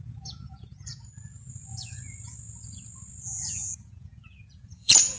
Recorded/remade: remade